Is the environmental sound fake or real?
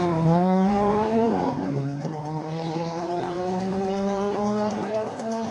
fake